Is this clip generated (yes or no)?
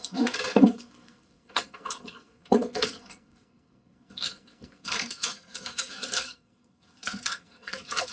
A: yes